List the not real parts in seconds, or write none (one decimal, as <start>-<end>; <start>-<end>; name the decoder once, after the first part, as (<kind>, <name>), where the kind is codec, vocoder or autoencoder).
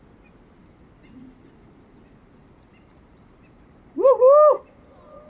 2.4-4.2 (vocoder, BigVGAN v2)